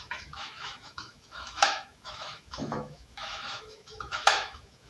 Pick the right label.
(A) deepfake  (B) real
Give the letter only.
A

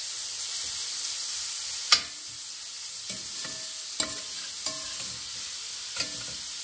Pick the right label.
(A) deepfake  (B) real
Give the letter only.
B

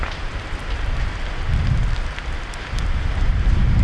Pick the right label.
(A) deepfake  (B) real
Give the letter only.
B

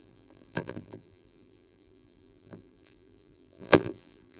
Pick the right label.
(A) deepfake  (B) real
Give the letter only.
A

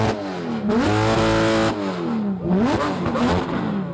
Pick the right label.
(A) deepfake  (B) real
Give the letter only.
B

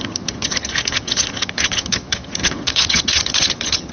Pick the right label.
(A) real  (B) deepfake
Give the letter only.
B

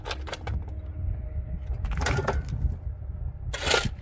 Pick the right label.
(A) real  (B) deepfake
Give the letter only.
A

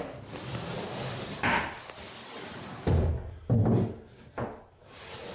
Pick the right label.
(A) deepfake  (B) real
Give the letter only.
B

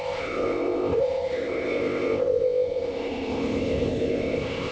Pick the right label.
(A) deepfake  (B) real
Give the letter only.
A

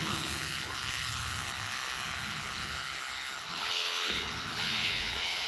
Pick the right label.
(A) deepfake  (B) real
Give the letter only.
A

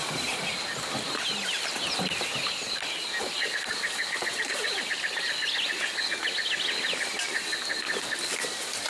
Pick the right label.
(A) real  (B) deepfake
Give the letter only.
A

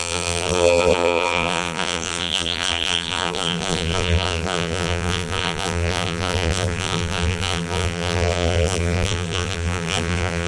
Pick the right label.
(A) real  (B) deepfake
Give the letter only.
B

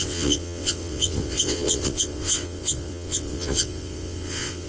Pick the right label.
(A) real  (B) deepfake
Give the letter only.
B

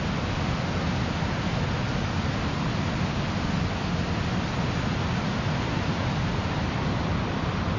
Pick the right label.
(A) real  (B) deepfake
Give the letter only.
A